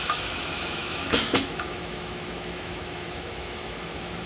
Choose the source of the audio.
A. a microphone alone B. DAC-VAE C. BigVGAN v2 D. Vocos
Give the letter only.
B